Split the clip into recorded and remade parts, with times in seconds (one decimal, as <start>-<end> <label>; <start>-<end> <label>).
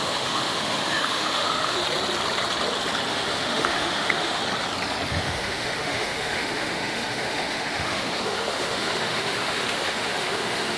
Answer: 0.0-1.8 remade; 1.8-3.1 recorded; 3.1-4.4 remade; 4.4-5.1 recorded; 5.1-10.8 remade